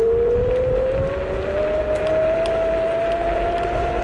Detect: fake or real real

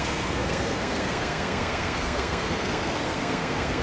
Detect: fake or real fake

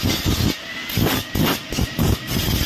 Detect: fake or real real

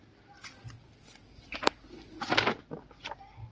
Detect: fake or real real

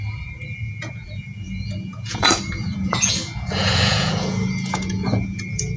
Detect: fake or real fake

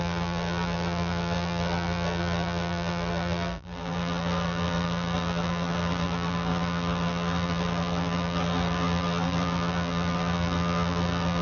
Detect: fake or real fake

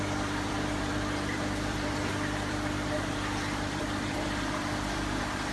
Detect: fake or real fake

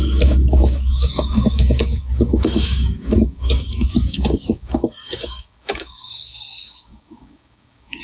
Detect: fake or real fake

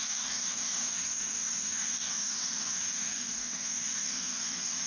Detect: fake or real fake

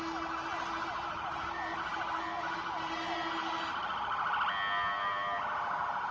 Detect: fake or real real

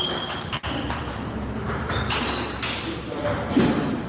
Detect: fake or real fake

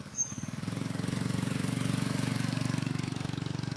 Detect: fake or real fake